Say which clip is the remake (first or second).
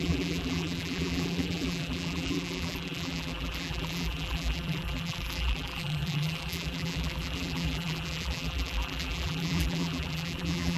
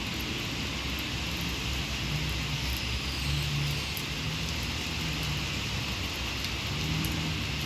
first